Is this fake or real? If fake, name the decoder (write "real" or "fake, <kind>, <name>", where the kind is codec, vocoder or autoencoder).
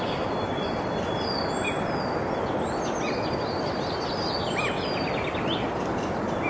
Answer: real